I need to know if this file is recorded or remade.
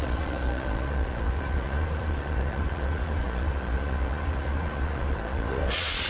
remade